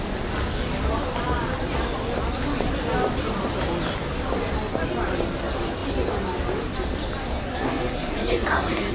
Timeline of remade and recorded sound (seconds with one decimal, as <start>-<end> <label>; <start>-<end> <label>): 0.0-7.4 recorded; 7.4-8.9 remade